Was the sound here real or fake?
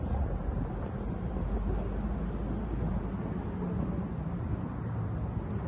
real